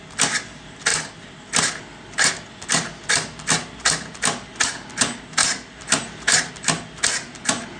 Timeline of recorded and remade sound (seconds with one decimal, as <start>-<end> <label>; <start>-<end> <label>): 0.0-7.8 recorded